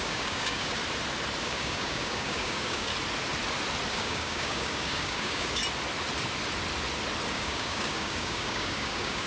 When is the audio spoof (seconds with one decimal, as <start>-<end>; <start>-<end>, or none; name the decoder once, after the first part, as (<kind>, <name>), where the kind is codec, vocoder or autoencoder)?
0.0-0.8 (codec, DAC); 1.4-2.9; 3.9-5.6; 7.3-9.3